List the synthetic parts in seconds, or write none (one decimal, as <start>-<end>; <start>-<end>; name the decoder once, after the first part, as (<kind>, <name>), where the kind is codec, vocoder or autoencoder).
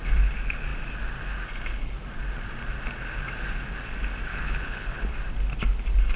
4.3-5.1 (codec, HILCodec)